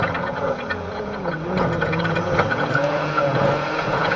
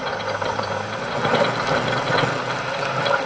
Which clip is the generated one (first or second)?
first